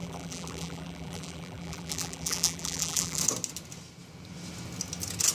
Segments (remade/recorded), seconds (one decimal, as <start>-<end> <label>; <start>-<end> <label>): 0.0-3.2 remade; 3.2-5.3 recorded